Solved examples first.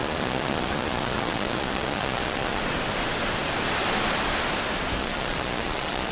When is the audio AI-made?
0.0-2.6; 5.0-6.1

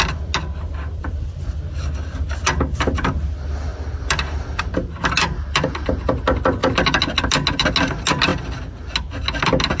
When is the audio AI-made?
none